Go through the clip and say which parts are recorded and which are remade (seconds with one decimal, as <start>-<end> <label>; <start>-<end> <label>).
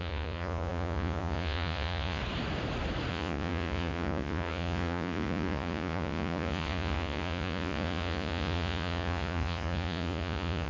0.0-2.2 remade; 2.2-3.1 recorded; 3.1-10.7 remade